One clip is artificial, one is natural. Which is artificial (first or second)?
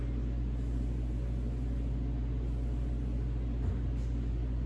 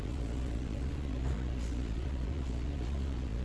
second